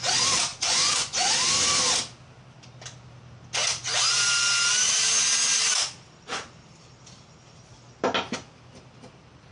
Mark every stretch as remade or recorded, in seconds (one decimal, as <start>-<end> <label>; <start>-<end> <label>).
0.0-0.5 recorded; 0.5-1.3 remade; 1.3-9.5 recorded